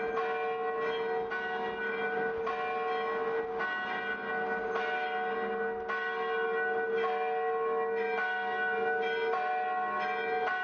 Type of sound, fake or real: real